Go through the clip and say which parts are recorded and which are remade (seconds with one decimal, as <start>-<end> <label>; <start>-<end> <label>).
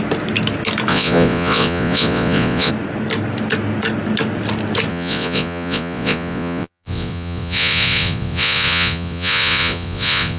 0.0-0.9 recorded; 0.9-2.7 remade; 2.7-4.9 recorded; 4.9-10.4 remade